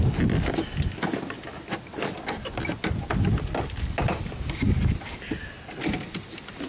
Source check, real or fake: real